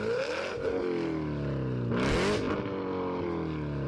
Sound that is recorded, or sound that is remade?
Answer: recorded